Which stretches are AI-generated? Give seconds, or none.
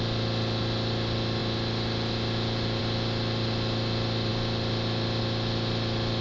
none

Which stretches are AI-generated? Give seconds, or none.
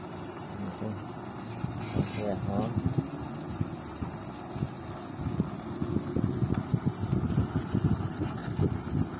none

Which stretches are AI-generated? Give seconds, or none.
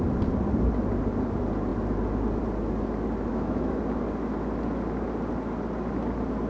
3.3-3.8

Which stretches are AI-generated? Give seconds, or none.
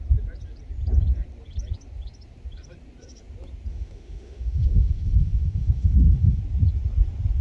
3.7-6.4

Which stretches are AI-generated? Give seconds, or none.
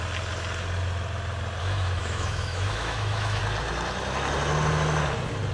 1.6-3.4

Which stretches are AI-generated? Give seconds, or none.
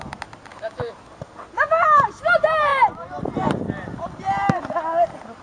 0.5-1.1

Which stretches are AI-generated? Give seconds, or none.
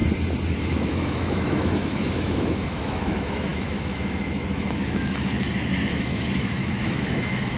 0.5-7.6